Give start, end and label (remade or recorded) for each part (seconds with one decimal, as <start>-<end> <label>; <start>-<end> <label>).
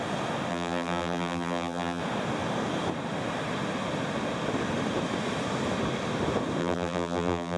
0.0-0.5 recorded; 0.5-2.0 remade; 2.0-6.6 recorded; 6.6-7.6 remade